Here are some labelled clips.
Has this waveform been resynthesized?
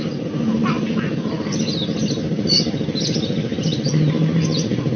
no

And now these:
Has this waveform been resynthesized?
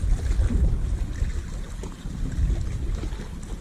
no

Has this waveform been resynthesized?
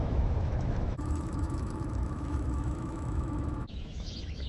yes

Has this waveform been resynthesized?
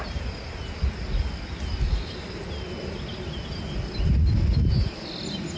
no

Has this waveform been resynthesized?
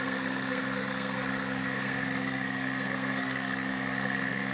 yes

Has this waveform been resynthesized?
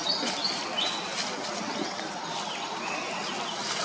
no